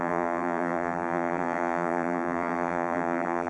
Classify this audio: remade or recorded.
remade